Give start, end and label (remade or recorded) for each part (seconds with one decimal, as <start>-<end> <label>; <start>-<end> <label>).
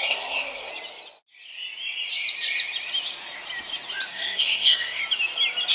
0.0-0.7 remade; 0.7-4.1 recorded; 4.1-5.0 remade; 5.0-5.7 recorded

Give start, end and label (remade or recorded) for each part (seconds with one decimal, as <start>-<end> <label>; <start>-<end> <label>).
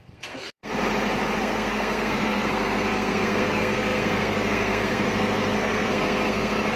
0.0-0.7 remade; 0.7-1.4 recorded; 1.4-6.8 remade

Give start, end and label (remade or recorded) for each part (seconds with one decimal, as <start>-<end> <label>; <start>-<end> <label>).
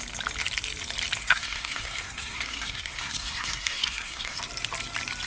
0.0-1.2 recorded; 1.2-4.4 remade; 4.4-5.3 recorded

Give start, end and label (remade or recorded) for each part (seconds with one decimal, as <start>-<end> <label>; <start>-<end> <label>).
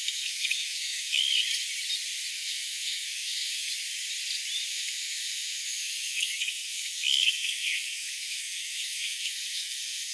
0.0-1.2 remade; 1.2-2.3 recorded; 2.3-3.7 remade; 3.7-4.7 recorded; 4.7-10.1 remade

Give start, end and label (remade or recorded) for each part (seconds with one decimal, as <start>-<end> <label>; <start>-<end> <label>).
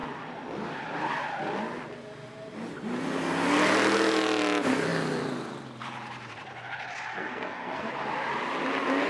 0.0-7.1 recorded; 7.1-7.9 remade; 7.9-9.1 recorded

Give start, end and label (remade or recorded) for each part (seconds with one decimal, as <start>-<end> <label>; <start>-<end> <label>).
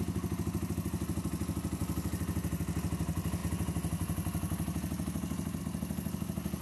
0.0-6.6 recorded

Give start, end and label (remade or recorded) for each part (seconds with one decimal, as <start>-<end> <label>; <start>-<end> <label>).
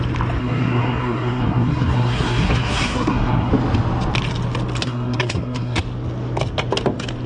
0.0-0.4 recorded; 0.4-3.5 remade; 3.5-4.8 recorded; 4.8-5.8 remade; 5.8-7.3 recorded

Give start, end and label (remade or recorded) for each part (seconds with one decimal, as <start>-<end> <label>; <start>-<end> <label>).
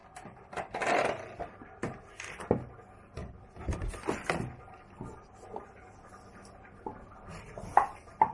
0.0-8.3 recorded